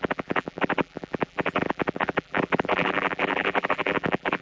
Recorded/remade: remade